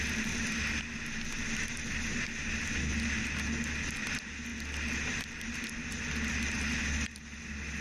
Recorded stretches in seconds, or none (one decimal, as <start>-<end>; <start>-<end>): 0.0-7.8

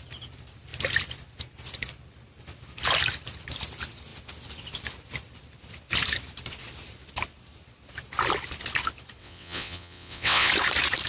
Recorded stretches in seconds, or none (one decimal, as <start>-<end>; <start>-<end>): 0.0-9.2; 10.5-11.1

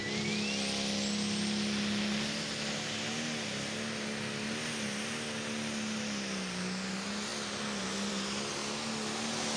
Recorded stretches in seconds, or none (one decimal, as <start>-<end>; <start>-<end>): 0.0-9.6

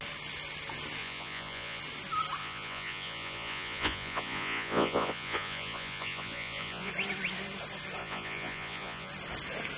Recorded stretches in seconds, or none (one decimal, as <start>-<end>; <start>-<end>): 0.0-1.0; 1.8-2.4; 6.9-8.0; 9.1-9.8

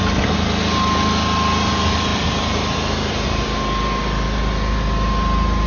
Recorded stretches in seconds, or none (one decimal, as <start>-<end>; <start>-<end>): 0.0-2.1; 3.6-5.7